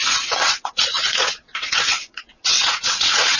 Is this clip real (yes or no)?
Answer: no